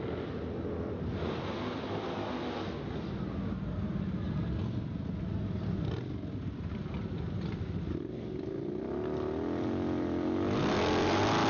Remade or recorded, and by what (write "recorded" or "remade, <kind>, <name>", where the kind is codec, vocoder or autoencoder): recorded